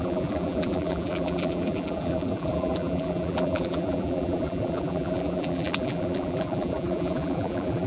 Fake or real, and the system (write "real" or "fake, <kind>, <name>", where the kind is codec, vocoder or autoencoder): fake, vocoder, BigVGAN v2